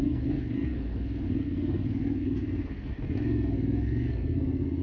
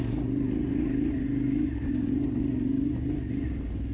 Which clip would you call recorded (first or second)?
second